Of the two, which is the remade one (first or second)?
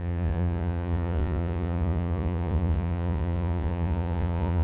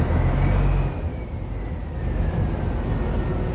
first